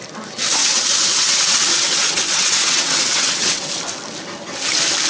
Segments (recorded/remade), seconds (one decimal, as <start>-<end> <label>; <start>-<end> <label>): 0.0-0.6 recorded; 0.6-3.7 remade; 3.7-5.1 recorded